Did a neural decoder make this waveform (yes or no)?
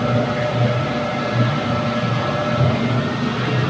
no